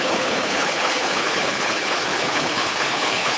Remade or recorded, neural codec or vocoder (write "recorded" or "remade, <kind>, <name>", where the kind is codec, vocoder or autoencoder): remade, codec, HILCodec